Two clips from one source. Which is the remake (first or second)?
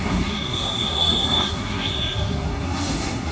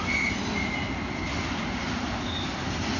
first